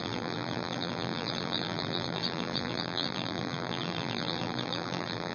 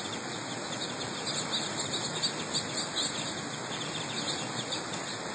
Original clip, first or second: second